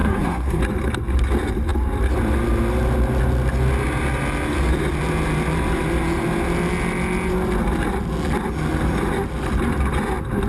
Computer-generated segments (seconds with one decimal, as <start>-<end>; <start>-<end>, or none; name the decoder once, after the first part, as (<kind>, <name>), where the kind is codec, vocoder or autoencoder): 0.0-0.6 (codec, SNAC)